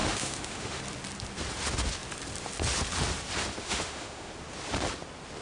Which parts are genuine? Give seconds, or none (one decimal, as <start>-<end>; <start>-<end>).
0.8-3.6; 4.3-5.4